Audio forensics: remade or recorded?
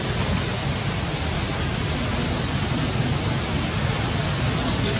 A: recorded